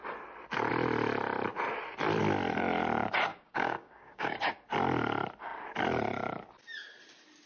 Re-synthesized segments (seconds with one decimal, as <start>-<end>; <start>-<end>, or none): 3.3-4.5